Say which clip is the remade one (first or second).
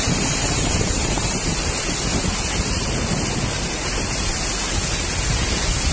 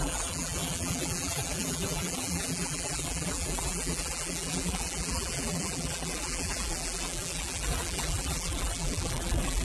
second